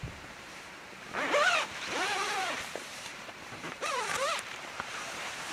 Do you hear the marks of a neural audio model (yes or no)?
yes